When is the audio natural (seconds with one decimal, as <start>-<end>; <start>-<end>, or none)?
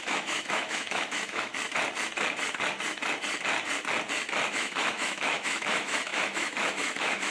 1.5-4.5